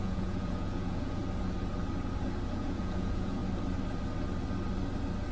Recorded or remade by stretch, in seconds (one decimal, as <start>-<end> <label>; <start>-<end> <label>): 0.0-1.2 remade; 1.2-2.5 recorded; 2.5-3.4 remade; 3.4-5.3 recorded

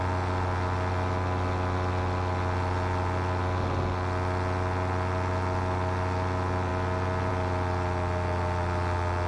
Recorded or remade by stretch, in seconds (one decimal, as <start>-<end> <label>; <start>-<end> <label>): 0.0-9.3 recorded

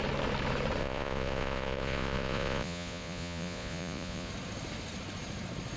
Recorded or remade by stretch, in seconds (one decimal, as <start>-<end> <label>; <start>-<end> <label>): 0.0-0.8 recorded; 0.8-4.3 remade; 4.3-5.8 recorded

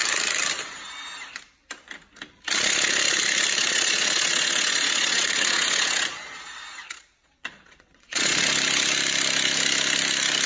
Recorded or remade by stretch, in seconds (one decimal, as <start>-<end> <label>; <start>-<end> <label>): 0.0-3.6 recorded; 3.6-8.4 remade; 8.4-10.5 recorded